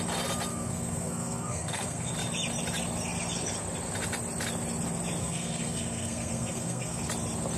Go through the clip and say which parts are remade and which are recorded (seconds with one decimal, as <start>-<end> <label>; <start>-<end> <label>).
0.0-0.5 recorded; 0.5-2.1 remade; 2.1-5.2 recorded; 5.2-7.0 remade; 7.0-7.6 recorded